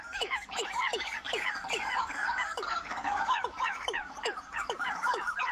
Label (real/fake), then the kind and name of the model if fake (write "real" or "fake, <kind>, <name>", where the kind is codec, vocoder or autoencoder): fake, codec, DAC